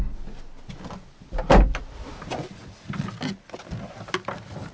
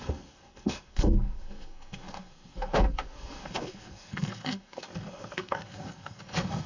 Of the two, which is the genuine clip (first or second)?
first